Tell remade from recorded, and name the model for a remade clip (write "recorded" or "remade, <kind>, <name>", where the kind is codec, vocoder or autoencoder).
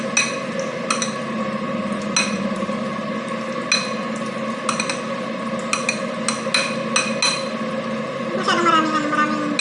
recorded